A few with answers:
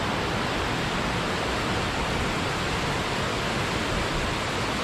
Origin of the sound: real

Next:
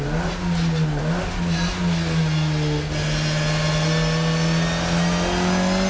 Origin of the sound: real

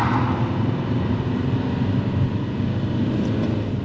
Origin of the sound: real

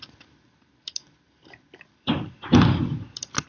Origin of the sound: fake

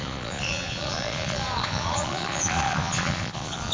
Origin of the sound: fake